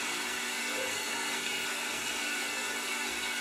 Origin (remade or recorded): remade